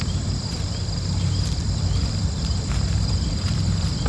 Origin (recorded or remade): remade